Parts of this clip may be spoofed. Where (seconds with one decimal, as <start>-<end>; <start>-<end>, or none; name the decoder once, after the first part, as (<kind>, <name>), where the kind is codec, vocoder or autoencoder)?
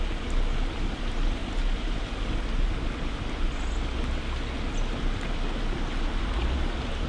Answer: none